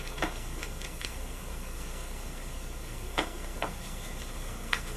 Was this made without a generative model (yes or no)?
no